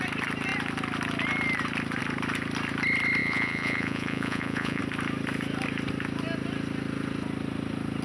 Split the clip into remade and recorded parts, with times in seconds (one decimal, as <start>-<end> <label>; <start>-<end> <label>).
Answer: 0.0-3.2 recorded; 3.2-4.8 remade; 4.8-8.0 recorded